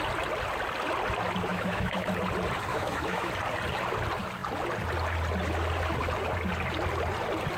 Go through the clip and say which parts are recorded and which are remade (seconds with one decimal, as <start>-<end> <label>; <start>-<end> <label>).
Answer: 0.0-1.5 recorded; 1.5-2.1 remade; 2.1-2.7 recorded; 2.7-3.3 remade; 3.3-7.6 recorded